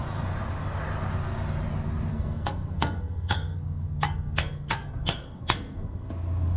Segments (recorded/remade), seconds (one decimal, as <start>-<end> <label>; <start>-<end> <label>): 0.0-2.1 recorded; 2.1-6.1 remade; 6.1-6.6 recorded